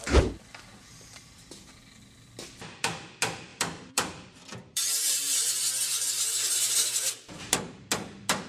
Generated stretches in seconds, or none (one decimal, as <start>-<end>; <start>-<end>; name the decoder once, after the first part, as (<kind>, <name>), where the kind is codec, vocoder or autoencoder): 3.5-7.1 (vocoder, BigVGAN v2)